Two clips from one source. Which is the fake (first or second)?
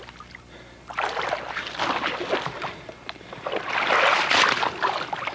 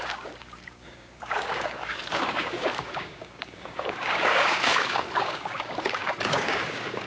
second